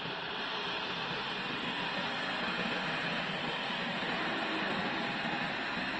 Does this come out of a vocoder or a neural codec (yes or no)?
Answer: no